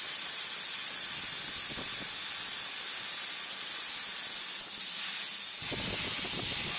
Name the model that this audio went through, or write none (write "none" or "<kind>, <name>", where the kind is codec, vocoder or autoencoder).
none